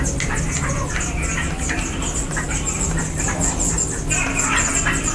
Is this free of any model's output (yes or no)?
yes